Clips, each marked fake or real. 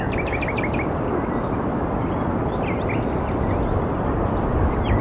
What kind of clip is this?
real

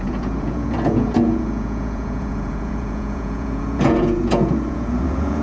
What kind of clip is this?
fake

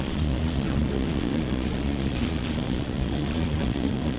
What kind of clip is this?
fake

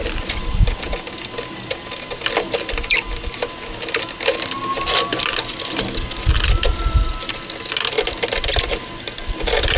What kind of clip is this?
real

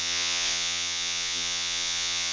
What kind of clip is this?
fake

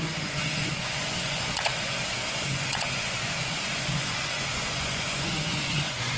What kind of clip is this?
fake